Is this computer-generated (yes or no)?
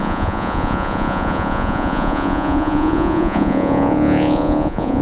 yes